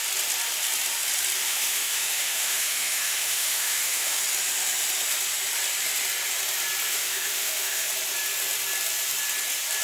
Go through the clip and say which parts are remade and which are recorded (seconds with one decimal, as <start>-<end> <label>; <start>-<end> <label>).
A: 0.0-1.4 recorded; 1.4-4.2 remade; 4.2-6.9 recorded; 6.9-7.9 remade; 7.9-9.8 recorded